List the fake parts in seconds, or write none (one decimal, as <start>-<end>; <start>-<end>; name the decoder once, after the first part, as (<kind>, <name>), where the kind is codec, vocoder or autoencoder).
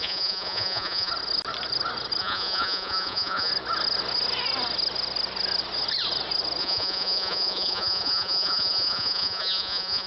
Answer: 0.0-1.1 (vocoder, Vocos); 2.2-3.5; 6.6-10.1